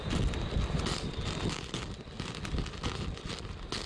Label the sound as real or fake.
real